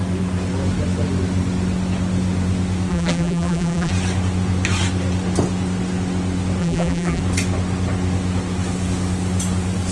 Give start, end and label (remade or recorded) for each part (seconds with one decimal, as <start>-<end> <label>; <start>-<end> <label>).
0.0-2.9 recorded; 2.9-3.9 remade; 3.9-6.6 recorded; 6.6-7.2 remade; 7.2-9.9 recorded

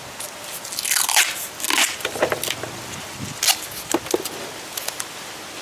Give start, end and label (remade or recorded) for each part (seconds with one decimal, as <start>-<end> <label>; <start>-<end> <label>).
0.0-5.6 recorded

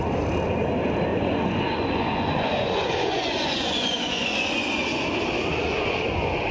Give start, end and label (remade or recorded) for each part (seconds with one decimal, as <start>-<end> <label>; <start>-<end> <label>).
0.0-1.1 recorded; 1.1-5.0 remade; 5.0-5.6 recorded; 5.6-6.5 remade

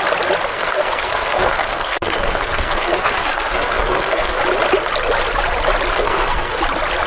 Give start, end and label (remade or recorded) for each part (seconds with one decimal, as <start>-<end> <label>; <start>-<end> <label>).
0.0-0.5 recorded; 0.5-4.4 remade; 4.4-5.9 recorded; 5.9-6.6 remade; 6.6-7.1 recorded